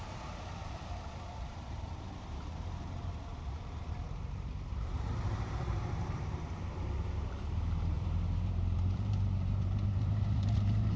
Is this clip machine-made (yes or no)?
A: yes